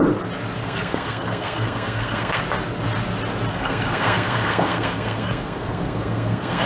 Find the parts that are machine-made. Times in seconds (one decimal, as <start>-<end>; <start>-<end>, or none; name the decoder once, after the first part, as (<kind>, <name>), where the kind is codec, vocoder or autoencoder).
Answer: 0.6-2.4 (codec, SNAC); 3.5-6.7